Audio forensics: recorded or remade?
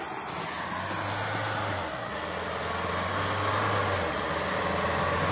recorded